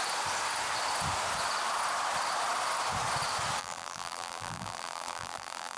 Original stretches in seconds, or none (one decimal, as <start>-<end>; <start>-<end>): 0.0-3.6